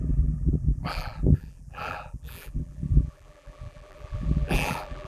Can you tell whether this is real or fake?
fake